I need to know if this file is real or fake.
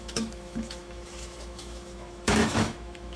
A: fake